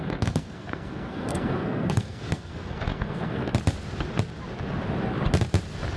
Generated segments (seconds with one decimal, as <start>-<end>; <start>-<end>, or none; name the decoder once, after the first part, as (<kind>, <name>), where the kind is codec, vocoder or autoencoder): 0.0-3.5 (codec, SNAC)